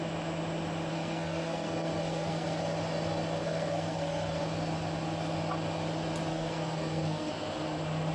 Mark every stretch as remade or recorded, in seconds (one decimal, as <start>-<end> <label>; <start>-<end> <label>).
0.0-0.9 recorded; 0.9-2.6 remade; 2.6-3.4 recorded; 3.4-4.4 remade; 4.4-6.3 recorded; 6.3-7.3 remade; 7.3-8.1 recorded